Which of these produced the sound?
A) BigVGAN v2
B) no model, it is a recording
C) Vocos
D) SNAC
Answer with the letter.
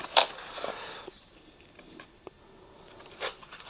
A